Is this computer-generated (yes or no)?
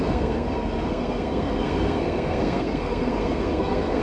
yes